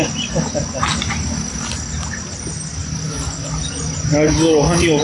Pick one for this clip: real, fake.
real